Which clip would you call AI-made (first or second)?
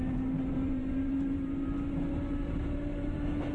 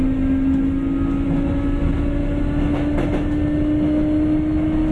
first